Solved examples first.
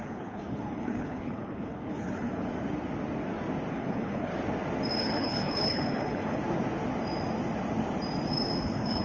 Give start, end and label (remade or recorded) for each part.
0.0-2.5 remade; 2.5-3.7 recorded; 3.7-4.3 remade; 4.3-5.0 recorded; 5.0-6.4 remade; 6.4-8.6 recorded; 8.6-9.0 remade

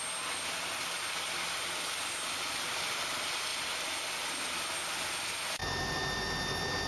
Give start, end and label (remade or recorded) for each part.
0.0-6.9 recorded